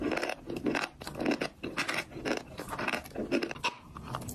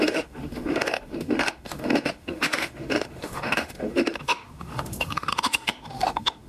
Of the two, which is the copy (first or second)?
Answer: second